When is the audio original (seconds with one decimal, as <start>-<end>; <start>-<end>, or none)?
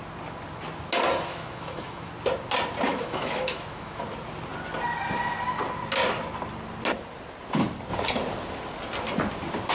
0.0-1.3; 2.1-2.9; 4.0-9.7